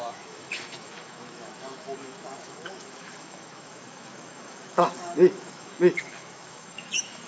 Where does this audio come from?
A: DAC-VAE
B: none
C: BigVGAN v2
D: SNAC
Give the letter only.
A